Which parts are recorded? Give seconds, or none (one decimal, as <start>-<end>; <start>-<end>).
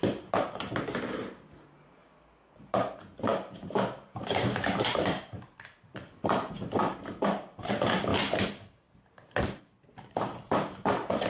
2.0-2.8